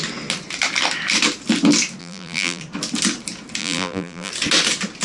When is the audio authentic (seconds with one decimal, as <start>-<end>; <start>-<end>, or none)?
0.0-2.0; 2.6-3.6; 4.3-5.0

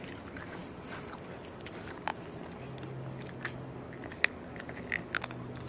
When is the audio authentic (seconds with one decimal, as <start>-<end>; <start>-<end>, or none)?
0.0-5.7

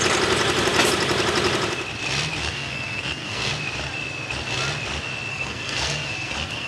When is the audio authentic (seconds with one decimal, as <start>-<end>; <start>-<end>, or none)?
0.0-2.4; 3.5-5.3

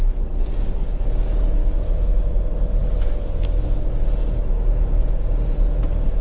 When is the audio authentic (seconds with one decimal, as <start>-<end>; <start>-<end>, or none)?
0.0-1.6; 2.3-6.2

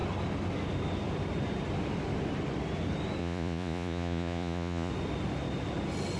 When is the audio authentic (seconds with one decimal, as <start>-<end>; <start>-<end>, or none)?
0.0-3.2; 4.9-6.2